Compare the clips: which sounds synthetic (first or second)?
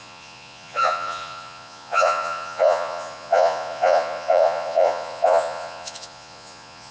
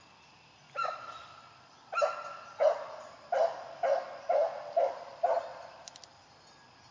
first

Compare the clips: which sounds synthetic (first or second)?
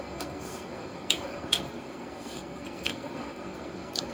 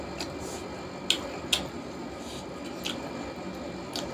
first